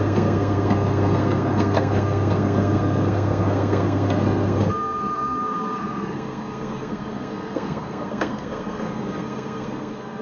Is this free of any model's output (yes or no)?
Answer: no